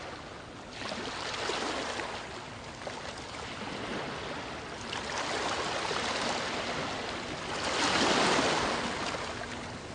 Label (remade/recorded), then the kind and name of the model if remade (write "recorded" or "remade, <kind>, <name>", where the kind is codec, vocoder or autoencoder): recorded